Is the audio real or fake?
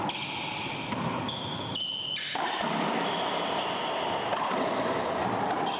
real